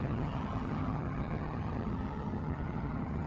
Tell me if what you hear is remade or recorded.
remade